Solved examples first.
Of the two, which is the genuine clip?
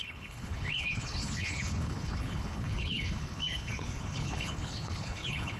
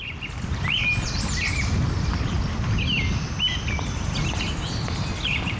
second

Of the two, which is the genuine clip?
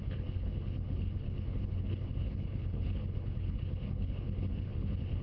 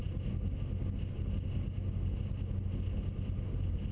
second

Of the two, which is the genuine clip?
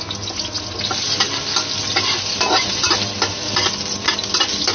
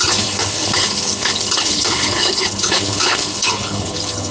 first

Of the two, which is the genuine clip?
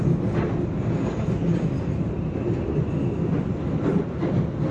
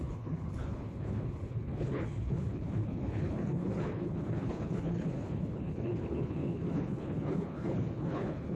first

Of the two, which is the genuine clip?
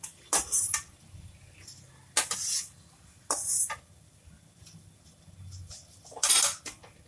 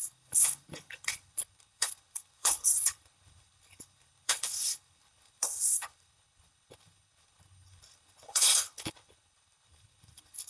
first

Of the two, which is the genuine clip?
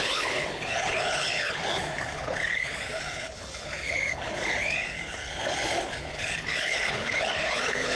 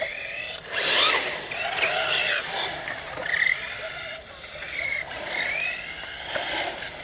second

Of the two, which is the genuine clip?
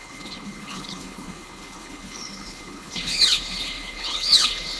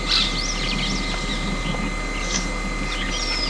second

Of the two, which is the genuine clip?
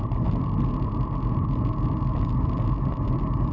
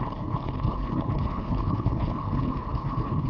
first